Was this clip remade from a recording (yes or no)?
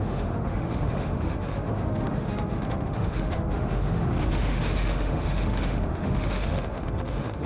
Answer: yes